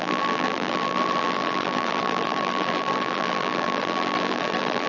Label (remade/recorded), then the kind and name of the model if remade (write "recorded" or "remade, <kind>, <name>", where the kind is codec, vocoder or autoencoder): remade, vocoder, BigVGAN v2